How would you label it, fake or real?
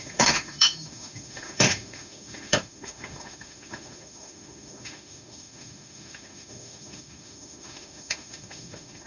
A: fake